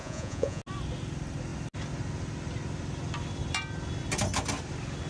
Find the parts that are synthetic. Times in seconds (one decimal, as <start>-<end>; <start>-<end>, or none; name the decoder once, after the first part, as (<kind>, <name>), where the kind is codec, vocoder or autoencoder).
0.0-0.6 (vocoder, Vocos)